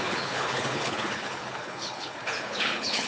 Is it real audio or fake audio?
fake